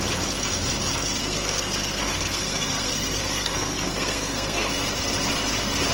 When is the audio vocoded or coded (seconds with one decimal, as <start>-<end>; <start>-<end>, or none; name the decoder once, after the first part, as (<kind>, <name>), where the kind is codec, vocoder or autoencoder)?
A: 1.2-4.7 (codec, SNAC)